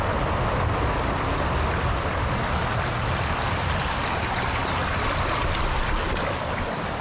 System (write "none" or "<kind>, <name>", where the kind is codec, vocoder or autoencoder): none